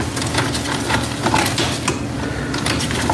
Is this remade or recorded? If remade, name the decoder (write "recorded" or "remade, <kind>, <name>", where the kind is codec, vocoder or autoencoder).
recorded